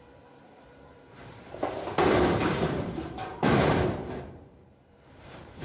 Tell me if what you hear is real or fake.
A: fake